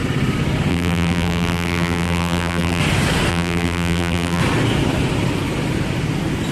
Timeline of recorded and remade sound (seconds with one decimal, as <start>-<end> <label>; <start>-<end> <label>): 0.0-0.7 recorded; 0.7-2.8 remade; 2.8-3.3 recorded; 3.3-4.4 remade; 4.4-6.5 recorded